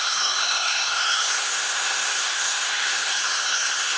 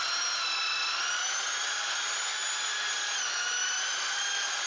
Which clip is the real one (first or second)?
second